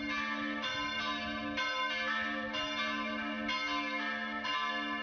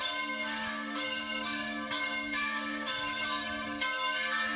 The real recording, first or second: first